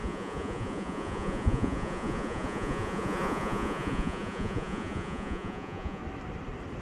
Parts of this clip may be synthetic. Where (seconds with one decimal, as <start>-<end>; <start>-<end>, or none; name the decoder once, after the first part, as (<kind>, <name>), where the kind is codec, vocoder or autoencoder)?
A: 0.0-6.0 (vocoder, Vocos)